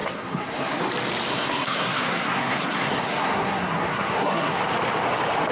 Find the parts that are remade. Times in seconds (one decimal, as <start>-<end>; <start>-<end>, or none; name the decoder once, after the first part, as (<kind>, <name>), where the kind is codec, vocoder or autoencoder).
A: 0.0-0.8 (codec, SNAC); 1.3-4.6